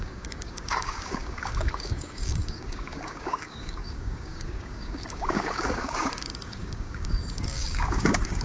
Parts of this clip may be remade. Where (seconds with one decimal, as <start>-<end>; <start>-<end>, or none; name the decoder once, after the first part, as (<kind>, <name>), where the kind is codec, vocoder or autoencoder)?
0.0-8.4 (codec, DAC)